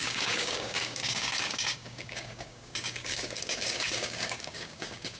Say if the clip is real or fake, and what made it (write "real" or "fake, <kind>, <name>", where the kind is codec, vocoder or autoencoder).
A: fake, codec, DAC